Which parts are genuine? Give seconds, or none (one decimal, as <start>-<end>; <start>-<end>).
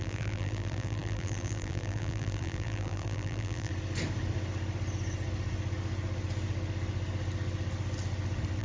3.7-8.6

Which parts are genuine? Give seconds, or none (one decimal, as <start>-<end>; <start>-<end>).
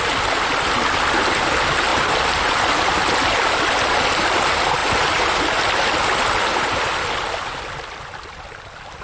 0.0-9.0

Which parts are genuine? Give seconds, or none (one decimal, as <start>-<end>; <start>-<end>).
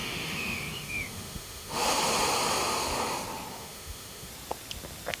2.0-3.5; 4.3-5.2